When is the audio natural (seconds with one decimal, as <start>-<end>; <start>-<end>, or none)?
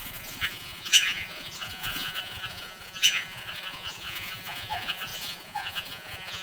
none